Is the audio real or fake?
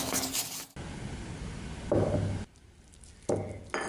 real